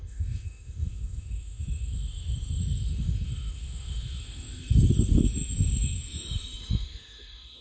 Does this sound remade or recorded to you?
remade